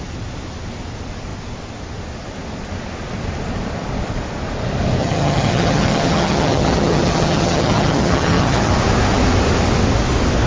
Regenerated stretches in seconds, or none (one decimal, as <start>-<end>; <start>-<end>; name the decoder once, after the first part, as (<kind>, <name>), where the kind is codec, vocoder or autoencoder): 5.0-8.7 (vocoder, HiFi-GAN)